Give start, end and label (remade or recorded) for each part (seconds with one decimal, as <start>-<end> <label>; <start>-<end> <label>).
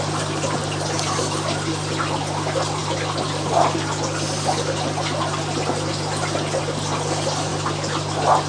0.0-2.8 remade; 2.8-6.6 recorded; 6.6-7.5 remade; 7.5-8.5 recorded